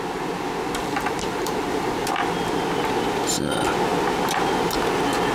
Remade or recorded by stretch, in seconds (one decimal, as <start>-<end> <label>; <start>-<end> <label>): 0.0-0.8 recorded; 0.8-2.0 remade; 2.0-5.3 recorded

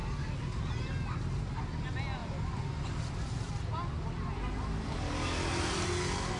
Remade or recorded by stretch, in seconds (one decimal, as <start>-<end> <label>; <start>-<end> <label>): 0.0-2.2 recorded; 2.2-3.0 remade; 3.0-6.4 recorded